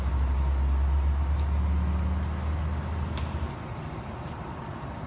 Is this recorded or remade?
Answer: recorded